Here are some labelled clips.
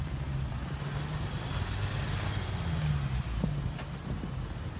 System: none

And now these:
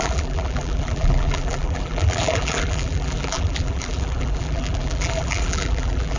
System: vocoder, BigVGAN v2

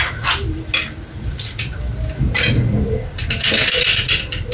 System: none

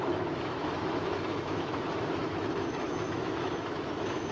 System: autoencoder, DAC-VAE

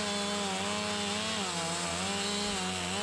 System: none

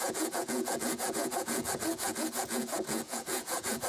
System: vocoder, Vocos